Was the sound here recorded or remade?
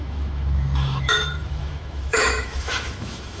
remade